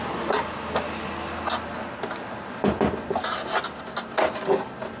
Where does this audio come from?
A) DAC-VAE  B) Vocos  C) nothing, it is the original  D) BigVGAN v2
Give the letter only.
C